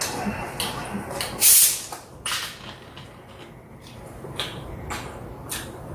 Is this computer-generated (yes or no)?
no